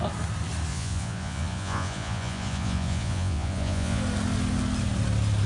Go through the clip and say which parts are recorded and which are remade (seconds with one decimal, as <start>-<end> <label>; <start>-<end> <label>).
0.0-0.7 recorded; 0.7-4.0 remade; 4.0-5.5 recorded